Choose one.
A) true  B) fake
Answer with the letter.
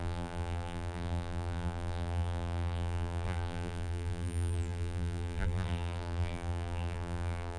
B